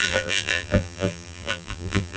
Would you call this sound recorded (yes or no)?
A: no